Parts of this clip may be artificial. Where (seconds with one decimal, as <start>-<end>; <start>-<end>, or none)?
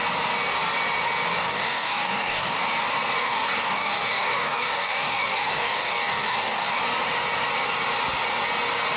1.3-2.6; 3.2-6.8